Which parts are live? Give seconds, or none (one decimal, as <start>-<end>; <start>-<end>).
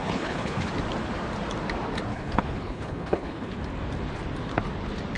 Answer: 0.7-2.1; 3.6-5.2